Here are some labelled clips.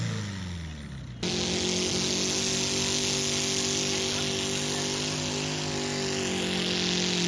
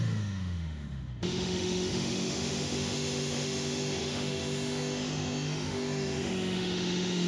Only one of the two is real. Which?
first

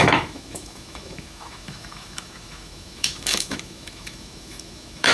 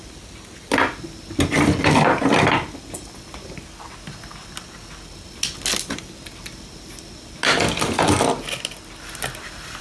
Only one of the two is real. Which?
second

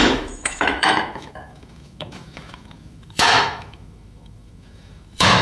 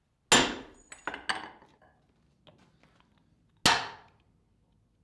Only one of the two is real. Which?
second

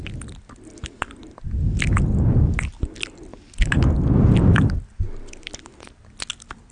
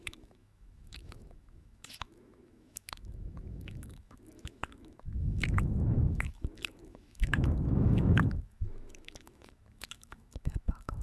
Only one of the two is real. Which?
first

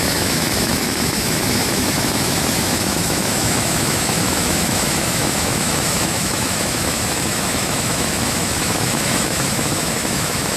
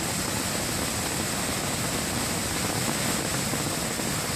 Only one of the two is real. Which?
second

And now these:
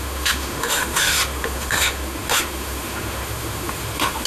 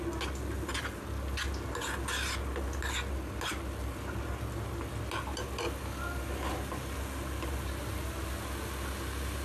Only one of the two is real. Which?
second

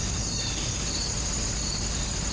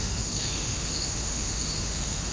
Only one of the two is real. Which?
first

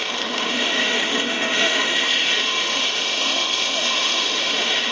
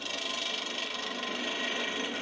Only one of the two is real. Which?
second